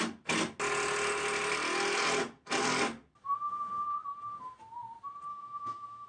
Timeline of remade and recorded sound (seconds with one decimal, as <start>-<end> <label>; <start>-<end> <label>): 0.0-5.3 recorded; 5.3-6.1 remade